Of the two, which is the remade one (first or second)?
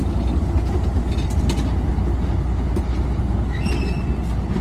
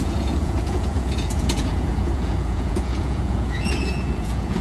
second